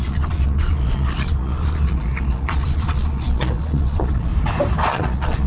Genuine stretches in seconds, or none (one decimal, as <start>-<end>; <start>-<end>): 4.3-4.9